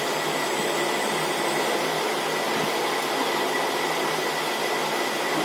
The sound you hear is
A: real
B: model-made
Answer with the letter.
A